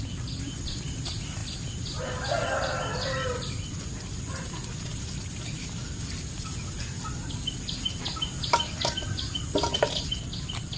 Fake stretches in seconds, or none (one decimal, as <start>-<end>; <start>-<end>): none